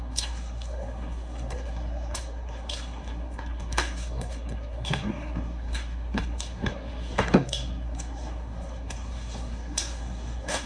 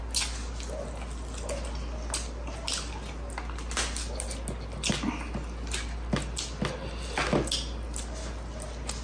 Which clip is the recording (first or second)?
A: second